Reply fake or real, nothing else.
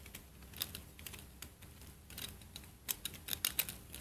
real